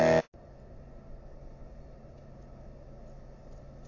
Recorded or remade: recorded